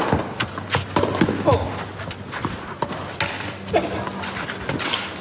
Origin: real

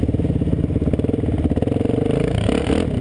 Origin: real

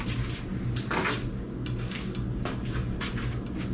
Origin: real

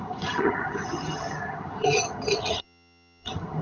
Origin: fake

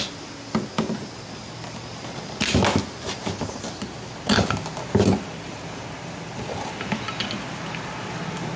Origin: real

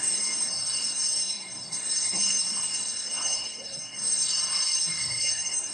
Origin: fake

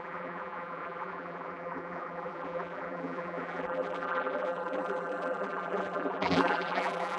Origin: fake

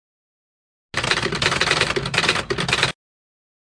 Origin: real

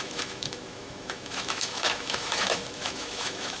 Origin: fake